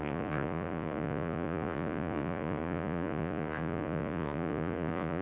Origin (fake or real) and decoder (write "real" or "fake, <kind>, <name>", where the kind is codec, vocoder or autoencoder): fake, vocoder, Vocos